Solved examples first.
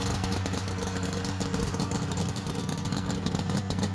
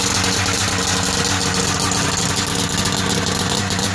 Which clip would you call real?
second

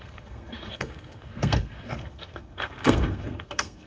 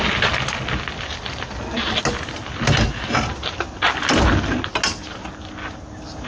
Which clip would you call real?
second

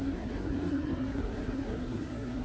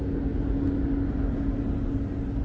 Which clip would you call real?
second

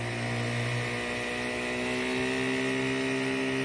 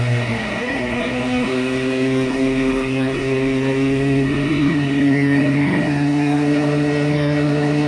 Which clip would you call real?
first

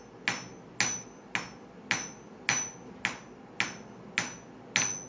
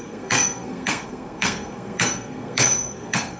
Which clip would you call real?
first